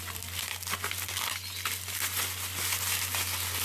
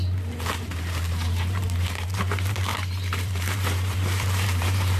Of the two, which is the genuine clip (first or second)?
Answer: first